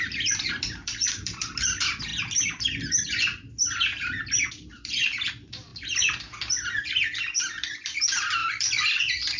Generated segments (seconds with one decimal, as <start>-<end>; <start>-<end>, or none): 0.0-2.1; 4.5-9.4